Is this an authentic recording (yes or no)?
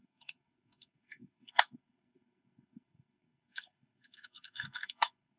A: no